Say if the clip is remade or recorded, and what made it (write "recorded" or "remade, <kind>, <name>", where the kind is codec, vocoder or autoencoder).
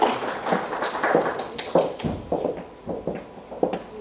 recorded